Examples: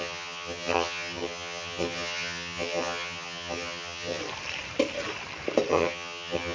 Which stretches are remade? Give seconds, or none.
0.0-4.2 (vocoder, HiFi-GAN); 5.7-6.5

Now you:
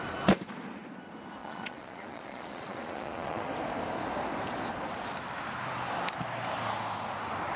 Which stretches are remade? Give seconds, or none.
1.4-3.5 (vocoder, Vocos)

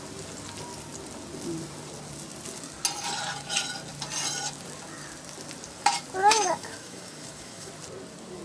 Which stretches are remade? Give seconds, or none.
6.2-7.7 (autoencoder, DAC-VAE)

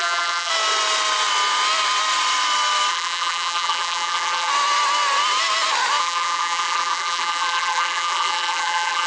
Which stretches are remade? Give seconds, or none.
0.0-0.5 (vocoder, BigVGAN v2); 2.9-4.5; 6.0-9.1

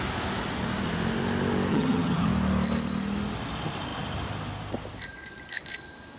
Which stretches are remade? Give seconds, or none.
1.7-2.3 (vocoder, HiFi-GAN)

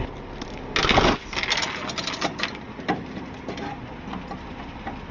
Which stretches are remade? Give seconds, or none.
none

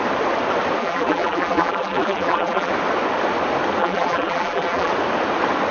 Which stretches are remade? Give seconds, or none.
0.8-2.7 (vocoder, BigVGAN v2); 3.8-4.9